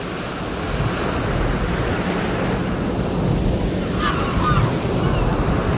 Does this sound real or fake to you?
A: real